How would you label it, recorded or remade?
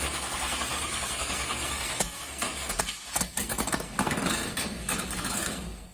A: remade